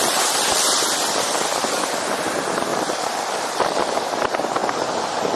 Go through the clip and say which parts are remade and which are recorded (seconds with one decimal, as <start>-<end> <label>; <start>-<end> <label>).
0.0-2.7 recorded; 2.7-4.0 remade; 4.0-5.4 recorded